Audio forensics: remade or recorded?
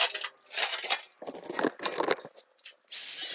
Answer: recorded